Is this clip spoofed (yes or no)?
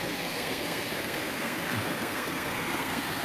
yes